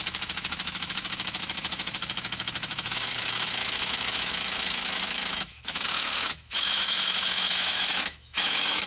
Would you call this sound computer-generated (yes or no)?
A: yes